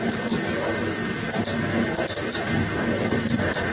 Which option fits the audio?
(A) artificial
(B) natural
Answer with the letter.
B